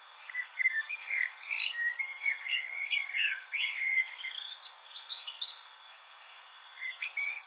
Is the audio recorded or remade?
remade